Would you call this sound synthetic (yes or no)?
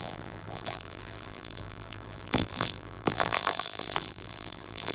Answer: yes